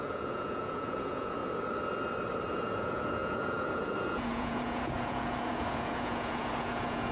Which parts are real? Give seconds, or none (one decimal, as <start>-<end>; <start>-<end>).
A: 1.4-2.5